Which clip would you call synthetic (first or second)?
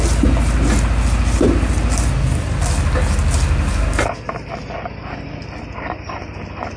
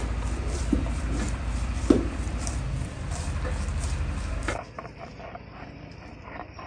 second